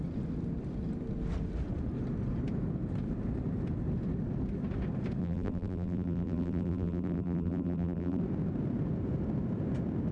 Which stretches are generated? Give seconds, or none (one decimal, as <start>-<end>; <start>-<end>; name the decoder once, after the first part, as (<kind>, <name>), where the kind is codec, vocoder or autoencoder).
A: 5.2-8.2 (vocoder, BigVGAN v2)